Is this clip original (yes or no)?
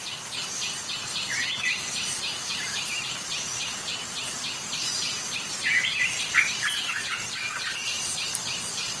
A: yes